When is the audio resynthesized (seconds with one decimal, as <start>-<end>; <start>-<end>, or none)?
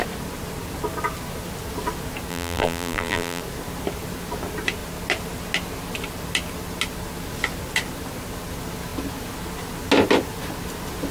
2.3-3.4